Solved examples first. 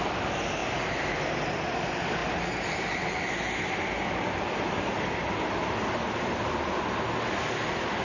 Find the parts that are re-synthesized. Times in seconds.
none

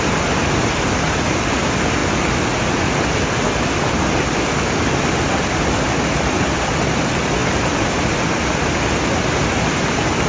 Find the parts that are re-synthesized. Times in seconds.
none

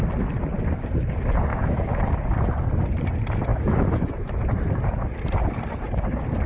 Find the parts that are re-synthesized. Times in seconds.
1.5-2.0 (autoencoder, DAC-VAE); 3.5-4.4

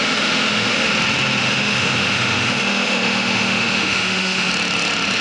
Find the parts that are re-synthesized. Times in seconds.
0.0-0.9 (autoencoder, DAC-VAE); 1.4-4.5